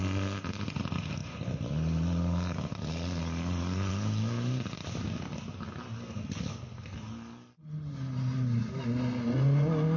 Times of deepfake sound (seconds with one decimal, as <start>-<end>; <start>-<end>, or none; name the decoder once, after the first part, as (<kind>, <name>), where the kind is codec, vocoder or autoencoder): none